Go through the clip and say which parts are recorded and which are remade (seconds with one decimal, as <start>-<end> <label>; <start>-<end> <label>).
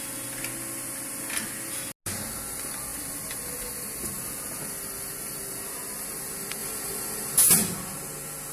0.0-8.5 recorded